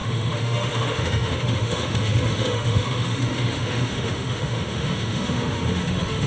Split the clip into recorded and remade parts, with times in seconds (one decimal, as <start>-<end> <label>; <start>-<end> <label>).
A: 0.0-6.3 remade